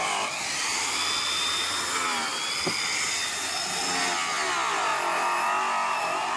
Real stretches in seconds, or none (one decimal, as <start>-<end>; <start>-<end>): 0.0-6.4